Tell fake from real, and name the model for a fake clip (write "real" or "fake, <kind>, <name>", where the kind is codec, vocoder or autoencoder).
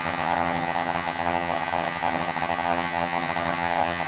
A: fake, vocoder, HiFi-GAN